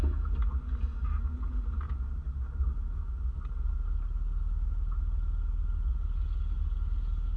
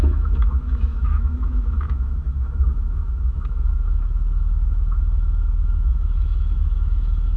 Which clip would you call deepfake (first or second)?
second